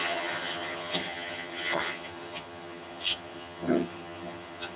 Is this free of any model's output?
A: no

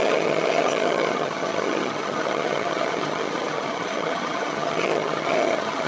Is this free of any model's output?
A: no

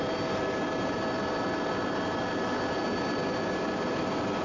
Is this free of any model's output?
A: yes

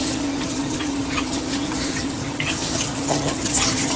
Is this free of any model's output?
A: no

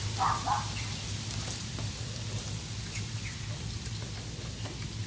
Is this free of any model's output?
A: yes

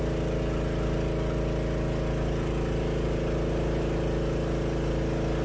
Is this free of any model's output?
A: yes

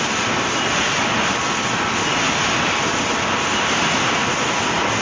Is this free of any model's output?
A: yes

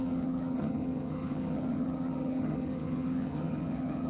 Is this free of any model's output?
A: no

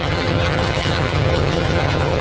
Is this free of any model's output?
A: no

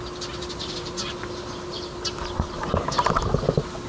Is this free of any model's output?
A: yes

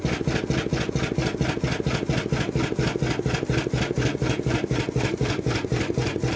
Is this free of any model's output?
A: yes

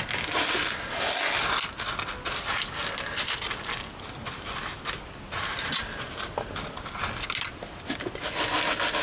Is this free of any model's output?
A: yes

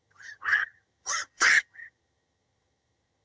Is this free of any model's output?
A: no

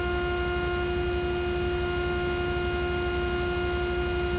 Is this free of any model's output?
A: yes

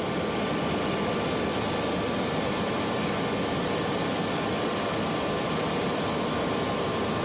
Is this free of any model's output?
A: yes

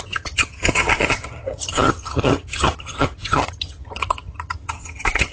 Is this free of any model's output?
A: no